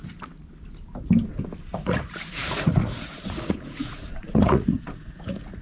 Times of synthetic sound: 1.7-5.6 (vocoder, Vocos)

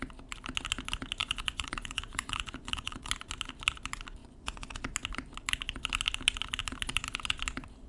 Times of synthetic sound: 1.2-3.1 (vocoder, Vocos); 4.2-4.8

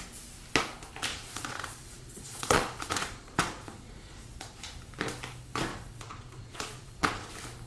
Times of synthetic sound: 1.1-4.6 (vocoder, Vocos); 5.7-7.3